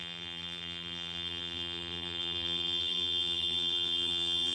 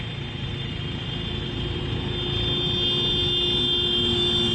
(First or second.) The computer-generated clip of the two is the first